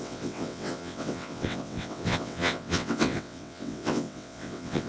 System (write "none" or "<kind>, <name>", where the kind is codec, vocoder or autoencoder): vocoder, WaveNeXt